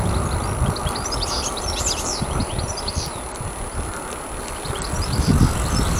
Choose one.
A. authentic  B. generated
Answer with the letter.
A